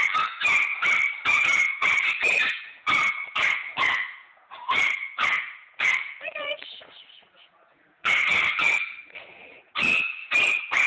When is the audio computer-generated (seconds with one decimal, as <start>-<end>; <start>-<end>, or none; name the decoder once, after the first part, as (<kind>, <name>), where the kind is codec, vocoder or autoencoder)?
0.0-0.7 (vocoder, Vocos); 1.3-10.9

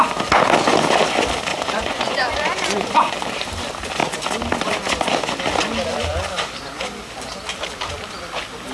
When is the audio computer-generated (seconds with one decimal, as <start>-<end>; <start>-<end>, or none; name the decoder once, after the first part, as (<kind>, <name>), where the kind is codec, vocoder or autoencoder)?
1.5-3.1 (vocoder, Vocos)

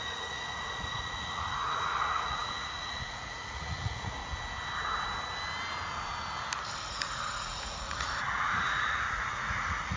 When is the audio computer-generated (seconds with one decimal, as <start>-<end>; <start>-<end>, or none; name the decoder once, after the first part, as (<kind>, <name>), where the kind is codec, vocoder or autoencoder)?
0.0-4.2 (vocoder, Vocos); 6.9-10.0

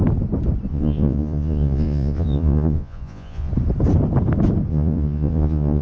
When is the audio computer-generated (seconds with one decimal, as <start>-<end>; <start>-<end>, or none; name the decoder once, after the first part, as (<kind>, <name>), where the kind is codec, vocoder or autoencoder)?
0.7-3.5 (vocoder, Vocos); 4.7-5.8

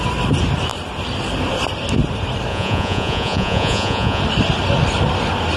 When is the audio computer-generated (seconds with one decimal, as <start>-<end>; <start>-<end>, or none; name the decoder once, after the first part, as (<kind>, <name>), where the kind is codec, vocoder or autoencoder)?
2.5-4.2 (vocoder, Vocos)

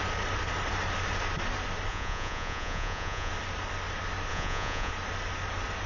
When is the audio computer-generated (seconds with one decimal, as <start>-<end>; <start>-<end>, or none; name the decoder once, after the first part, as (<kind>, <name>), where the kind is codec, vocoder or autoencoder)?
1.9-3.3 (vocoder, Vocos); 4.3-4.9

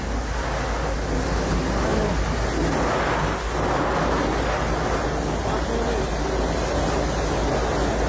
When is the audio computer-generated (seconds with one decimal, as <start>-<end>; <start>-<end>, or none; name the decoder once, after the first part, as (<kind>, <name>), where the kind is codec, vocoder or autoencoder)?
none